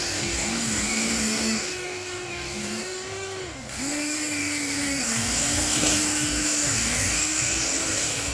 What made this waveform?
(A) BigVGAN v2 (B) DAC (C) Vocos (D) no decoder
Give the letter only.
B